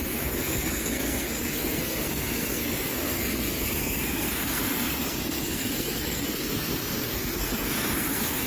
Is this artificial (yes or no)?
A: yes